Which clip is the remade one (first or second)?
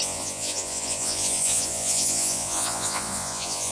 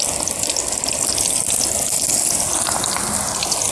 first